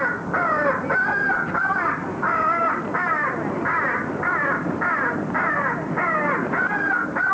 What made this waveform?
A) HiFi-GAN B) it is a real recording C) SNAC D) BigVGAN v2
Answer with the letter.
B